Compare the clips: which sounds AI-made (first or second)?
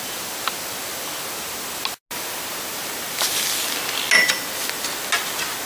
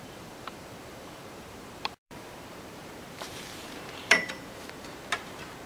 second